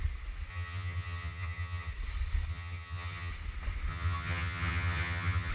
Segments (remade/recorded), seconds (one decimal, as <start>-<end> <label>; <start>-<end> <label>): 0.0-0.5 recorded; 0.5-1.9 remade; 1.9-2.5 recorded; 2.5-3.3 remade; 3.3-3.9 recorded; 3.9-5.5 remade